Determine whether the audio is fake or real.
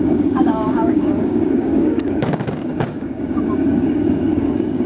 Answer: fake